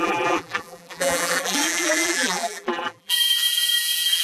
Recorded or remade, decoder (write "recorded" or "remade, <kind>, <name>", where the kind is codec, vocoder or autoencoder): remade, vocoder, BigVGAN v2